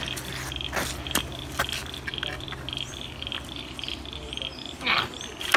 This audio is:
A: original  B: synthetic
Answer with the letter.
A